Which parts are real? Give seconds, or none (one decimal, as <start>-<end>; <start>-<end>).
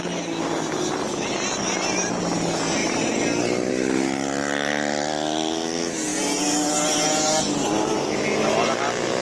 0.0-2.8; 3.7-9.2